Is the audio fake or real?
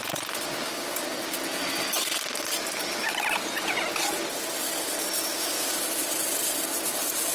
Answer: real